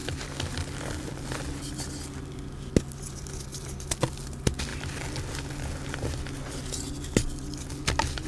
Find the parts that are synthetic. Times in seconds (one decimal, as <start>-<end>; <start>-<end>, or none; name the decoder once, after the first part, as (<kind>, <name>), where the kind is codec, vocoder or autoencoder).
none

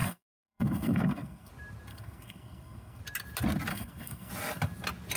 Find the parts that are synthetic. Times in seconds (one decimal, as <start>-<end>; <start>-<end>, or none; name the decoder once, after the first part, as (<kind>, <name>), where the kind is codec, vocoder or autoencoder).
0.0-1.5 (codec, SNAC); 1.9-3.0; 3.7-4.3

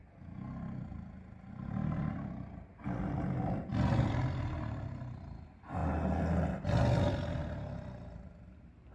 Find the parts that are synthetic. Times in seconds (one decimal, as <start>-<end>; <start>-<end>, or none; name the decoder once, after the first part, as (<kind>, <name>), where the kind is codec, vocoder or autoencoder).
none

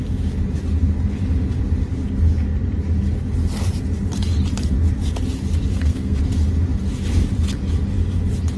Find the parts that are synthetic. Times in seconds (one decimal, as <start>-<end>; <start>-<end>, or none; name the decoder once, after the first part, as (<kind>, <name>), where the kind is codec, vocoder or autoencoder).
5.7-6.2 (codec, SNAC)